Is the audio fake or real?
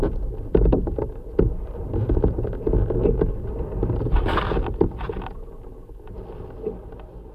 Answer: fake